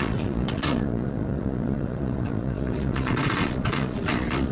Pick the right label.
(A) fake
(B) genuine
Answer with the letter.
A